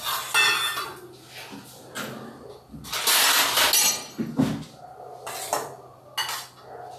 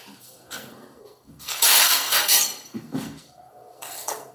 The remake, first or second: second